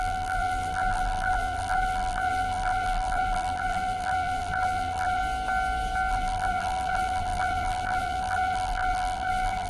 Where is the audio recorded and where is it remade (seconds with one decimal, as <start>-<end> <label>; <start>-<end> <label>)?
0.0-5.2 remade; 5.2-6.1 recorded; 6.1-9.7 remade